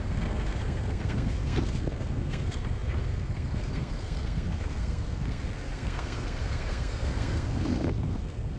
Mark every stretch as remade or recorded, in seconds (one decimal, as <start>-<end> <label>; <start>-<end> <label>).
0.0-8.6 remade